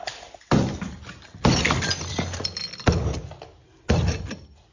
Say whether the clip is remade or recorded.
recorded